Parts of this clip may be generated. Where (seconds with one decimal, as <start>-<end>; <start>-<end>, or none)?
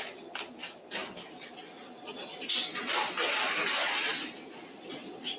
none